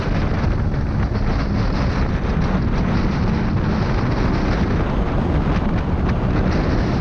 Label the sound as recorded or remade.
recorded